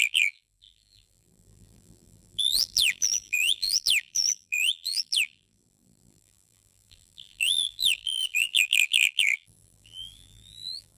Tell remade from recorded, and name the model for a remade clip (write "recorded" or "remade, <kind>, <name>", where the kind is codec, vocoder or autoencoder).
remade, vocoder, BigVGAN v2